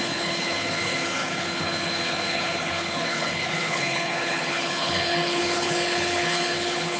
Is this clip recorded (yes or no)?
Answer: no